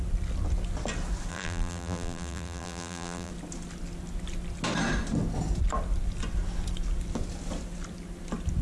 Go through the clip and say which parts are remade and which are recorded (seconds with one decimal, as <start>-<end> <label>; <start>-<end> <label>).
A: 0.0-1.3 recorded; 1.3-3.3 remade; 3.3-8.6 recorded

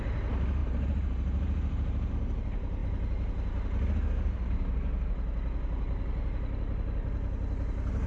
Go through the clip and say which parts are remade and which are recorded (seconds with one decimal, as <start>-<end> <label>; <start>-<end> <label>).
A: 0.0-0.6 recorded; 0.6-2.1 remade; 2.1-8.1 recorded

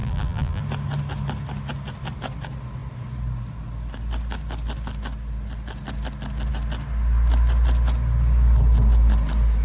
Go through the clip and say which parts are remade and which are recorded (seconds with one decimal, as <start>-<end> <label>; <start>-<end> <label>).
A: 0.0-0.6 remade; 0.6-9.6 recorded

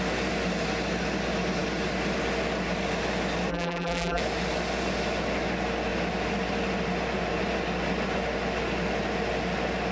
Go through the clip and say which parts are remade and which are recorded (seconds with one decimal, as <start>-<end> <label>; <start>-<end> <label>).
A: 0.0-3.5 recorded; 3.5-4.2 remade; 4.2-9.9 recorded

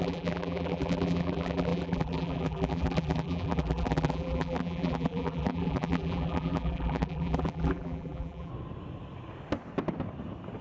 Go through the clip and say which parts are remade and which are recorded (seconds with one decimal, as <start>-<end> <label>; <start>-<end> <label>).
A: 0.0-8.5 remade; 8.5-10.6 recorded